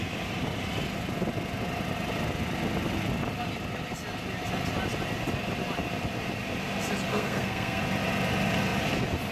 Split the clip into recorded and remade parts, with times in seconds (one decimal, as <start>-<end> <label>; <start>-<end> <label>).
0.0-7.1 recorded; 7.1-7.8 remade; 7.8-9.3 recorded